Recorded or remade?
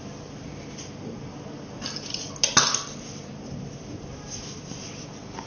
recorded